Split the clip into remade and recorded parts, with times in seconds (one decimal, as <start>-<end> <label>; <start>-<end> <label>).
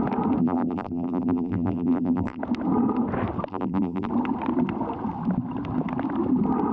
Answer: 0.0-0.4 recorded; 0.4-2.4 remade; 2.4-3.5 recorded; 3.5-4.1 remade; 4.1-6.7 recorded